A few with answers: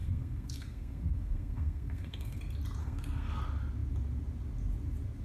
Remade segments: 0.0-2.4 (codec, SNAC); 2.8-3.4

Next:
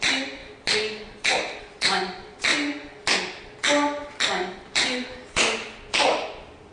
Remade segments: 0.0-0.4 (vocoder, BigVGAN v2); 1.6-2.5; 3.2-4.0; 4.6-6.7